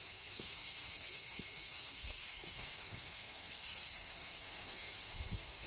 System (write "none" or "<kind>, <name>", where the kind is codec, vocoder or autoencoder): codec, SNAC